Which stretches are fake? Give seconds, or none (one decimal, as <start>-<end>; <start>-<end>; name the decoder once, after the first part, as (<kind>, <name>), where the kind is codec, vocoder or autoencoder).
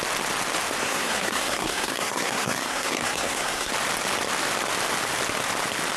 0.8-3.7 (codec, SNAC)